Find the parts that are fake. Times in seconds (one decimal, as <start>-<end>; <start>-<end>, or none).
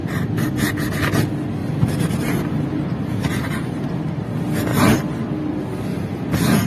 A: 0.0-0.5; 1.6-4.0; 4.7-5.5; 5.9-6.7